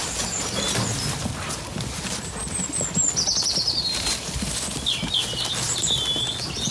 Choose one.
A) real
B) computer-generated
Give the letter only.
A